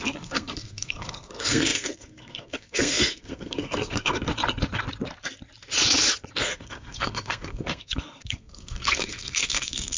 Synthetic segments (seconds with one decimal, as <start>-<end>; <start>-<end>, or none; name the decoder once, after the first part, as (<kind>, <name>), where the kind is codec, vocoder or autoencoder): 0.0-4.3 (codec, SNAC); 6.4-10.0